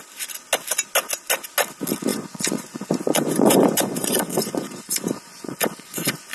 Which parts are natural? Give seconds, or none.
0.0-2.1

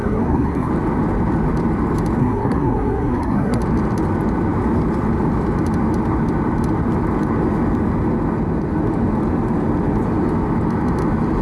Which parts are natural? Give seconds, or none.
0.7-2.2; 3.6-11.4